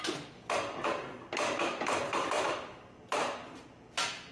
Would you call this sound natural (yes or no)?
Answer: yes